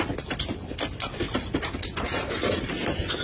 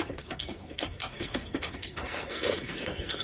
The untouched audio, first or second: first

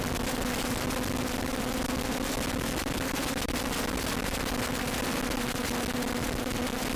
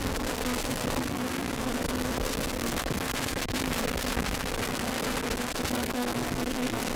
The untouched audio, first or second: first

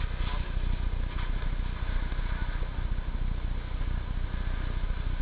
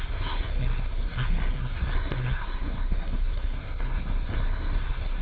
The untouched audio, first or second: first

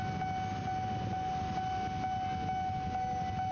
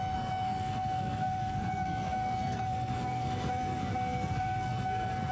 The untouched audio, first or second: first